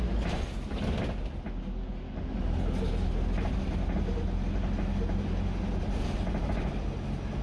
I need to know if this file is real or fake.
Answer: real